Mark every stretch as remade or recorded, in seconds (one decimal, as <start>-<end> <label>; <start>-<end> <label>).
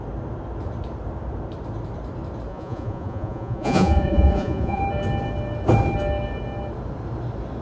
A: 0.0-2.5 recorded; 2.5-4.8 remade; 4.8-7.6 recorded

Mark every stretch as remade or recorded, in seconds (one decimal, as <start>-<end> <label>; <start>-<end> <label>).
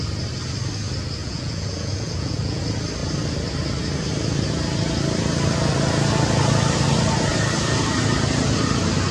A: 0.0-1.2 recorded; 1.2-2.6 remade; 2.6-9.1 recorded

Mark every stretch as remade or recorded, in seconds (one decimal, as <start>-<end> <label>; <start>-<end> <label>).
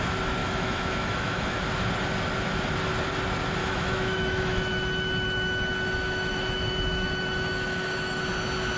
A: 0.0-0.4 recorded; 0.4-1.6 remade; 1.6-3.6 recorded; 3.6-8.2 remade; 8.2-8.8 recorded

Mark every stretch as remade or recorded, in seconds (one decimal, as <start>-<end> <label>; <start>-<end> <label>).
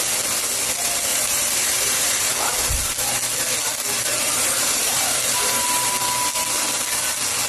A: 0.0-1.1 recorded; 1.1-2.3 remade; 2.3-4.1 recorded; 4.1-5.9 remade; 5.9-7.5 recorded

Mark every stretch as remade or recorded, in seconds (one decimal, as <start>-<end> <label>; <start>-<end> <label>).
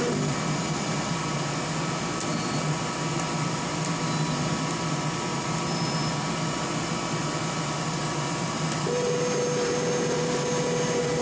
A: 0.0-11.2 recorded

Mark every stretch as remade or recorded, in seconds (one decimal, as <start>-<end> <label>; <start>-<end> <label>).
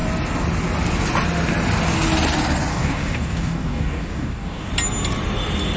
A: 0.0-2.7 recorded; 2.7-4.7 remade; 4.7-5.8 recorded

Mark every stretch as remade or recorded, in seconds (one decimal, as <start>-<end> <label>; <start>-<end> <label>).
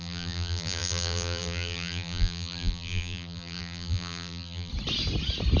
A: 0.0-4.7 remade; 4.7-5.6 recorded